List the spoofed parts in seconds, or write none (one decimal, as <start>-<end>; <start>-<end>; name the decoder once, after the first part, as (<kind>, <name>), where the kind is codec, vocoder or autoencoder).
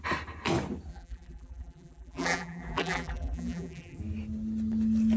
0.9-4.0 (vocoder, BigVGAN v2)